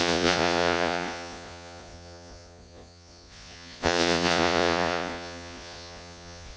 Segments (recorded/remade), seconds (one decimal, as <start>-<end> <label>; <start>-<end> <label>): 0.0-6.6 remade